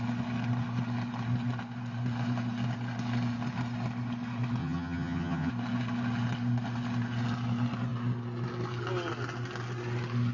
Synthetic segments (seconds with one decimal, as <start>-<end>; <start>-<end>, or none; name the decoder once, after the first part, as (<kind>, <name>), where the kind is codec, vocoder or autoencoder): 4.6-5.5 (vocoder, HiFi-GAN)